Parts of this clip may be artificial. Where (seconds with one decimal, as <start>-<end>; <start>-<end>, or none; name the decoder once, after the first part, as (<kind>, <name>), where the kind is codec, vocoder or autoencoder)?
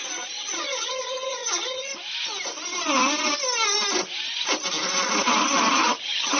0.0-1.9 (vocoder, HiFi-GAN); 5.7-6.4